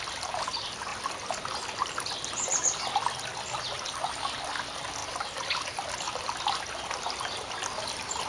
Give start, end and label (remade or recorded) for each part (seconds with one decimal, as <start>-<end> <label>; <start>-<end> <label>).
0.0-8.3 recorded